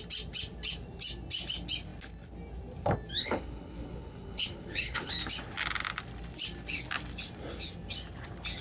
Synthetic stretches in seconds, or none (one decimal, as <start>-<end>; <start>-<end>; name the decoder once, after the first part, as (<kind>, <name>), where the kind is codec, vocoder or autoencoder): 3.2-5.1 (codec, HILCodec)